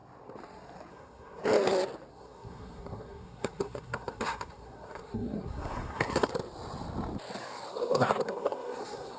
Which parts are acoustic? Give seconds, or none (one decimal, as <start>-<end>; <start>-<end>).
0.0-0.9; 1.4-2.1; 6.3-7.7